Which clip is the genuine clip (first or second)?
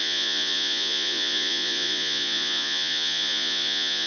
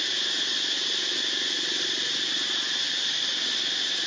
second